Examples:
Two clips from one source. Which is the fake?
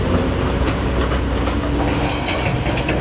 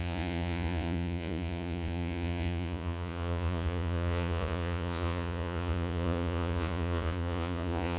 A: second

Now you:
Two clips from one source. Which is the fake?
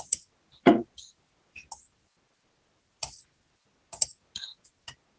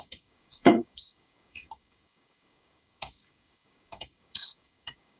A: second